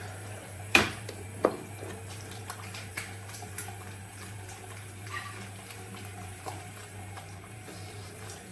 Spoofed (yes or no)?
yes